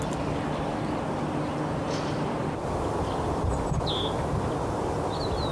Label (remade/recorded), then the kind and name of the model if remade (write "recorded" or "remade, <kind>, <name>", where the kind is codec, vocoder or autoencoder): recorded